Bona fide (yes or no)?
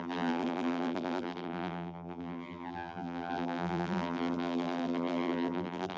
no